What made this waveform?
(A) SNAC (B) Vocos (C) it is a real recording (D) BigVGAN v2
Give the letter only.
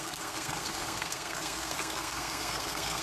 A